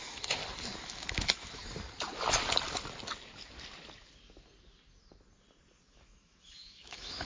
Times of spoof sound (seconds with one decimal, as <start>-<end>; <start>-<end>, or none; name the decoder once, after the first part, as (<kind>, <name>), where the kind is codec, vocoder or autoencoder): 0.0-0.4 (autoencoder, DAC-VAE); 0.9-1.6; 5.9-7.2